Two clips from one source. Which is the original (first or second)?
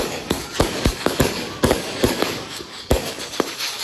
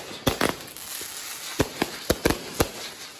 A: second